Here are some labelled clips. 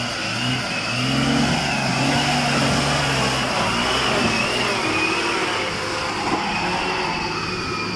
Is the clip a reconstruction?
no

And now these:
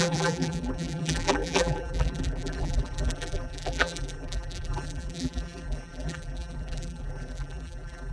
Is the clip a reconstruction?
yes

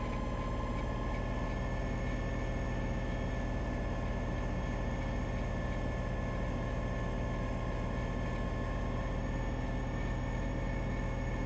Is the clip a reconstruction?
no